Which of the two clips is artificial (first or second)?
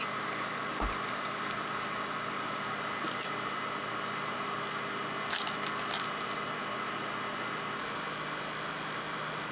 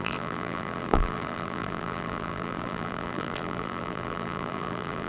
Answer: second